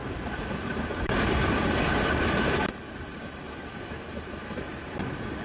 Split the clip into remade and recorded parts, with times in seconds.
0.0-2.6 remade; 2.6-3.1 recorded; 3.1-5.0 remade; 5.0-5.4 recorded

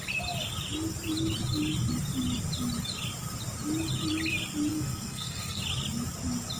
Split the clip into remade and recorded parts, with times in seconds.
0.0-4.7 recorded; 4.7-5.6 remade; 5.6-6.6 recorded

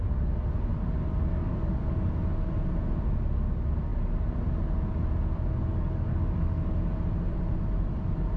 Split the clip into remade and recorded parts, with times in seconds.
0.0-1.3 recorded; 1.3-1.9 remade; 1.9-5.7 recorded; 5.7-6.7 remade; 6.7-8.4 recorded

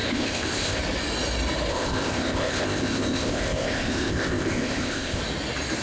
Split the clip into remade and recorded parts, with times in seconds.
0.0-0.8 remade; 0.8-1.7 recorded; 1.7-5.2 remade; 5.2-5.8 recorded

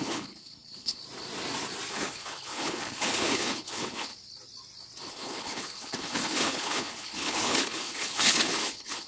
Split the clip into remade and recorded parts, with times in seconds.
0.0-1.0 remade; 1.0-1.9 recorded; 1.9-4.1 remade; 4.1-5.1 recorded; 5.1-9.1 remade

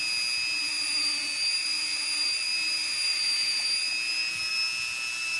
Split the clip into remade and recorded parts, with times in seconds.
0.0-0.7 recorded; 0.7-3.9 remade; 3.9-5.4 recorded

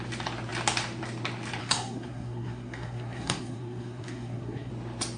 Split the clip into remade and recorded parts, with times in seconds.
0.0-1.6 recorded; 1.6-4.7 remade; 4.7-5.2 recorded